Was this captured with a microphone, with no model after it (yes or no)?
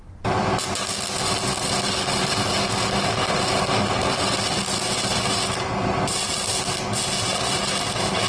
yes